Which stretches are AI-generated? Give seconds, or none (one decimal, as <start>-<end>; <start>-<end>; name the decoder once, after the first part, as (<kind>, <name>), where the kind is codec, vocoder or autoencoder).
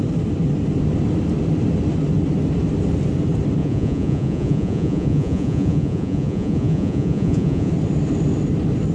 3.6-7.7 (vocoder, Vocos)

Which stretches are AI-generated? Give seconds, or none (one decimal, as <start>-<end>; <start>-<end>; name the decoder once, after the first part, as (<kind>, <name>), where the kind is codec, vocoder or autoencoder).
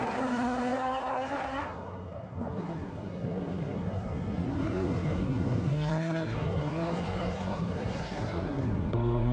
0.0-9.3 (codec, SNAC)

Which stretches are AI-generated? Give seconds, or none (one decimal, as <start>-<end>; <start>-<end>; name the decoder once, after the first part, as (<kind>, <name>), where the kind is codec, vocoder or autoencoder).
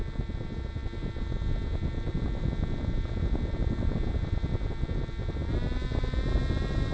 none